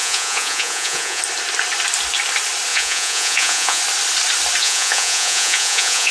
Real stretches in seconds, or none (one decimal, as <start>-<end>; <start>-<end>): 1.2-2.7; 3.8-4.6